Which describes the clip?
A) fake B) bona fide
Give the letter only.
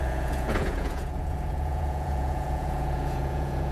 A